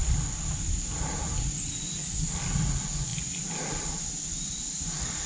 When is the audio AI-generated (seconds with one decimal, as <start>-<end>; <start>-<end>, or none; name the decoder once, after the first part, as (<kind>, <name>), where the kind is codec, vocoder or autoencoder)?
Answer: none